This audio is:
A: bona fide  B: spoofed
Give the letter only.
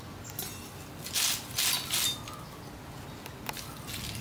A